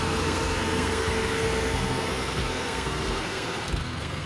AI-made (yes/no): yes